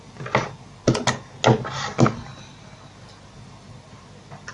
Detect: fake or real real